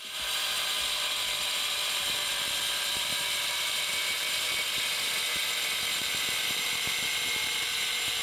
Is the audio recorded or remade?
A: remade